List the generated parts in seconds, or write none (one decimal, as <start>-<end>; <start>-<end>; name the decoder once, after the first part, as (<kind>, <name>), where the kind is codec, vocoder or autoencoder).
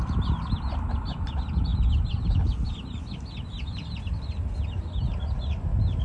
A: none